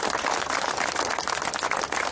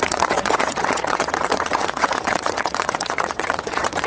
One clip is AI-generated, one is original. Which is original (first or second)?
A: first